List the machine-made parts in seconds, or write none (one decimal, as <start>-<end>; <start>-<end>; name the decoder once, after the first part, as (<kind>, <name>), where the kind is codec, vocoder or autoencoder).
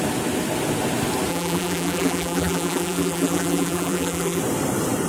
1.3-4.4 (vocoder, BigVGAN v2)